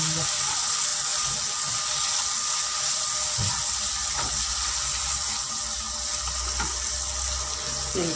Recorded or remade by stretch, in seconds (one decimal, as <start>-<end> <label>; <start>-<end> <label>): 0.0-8.2 recorded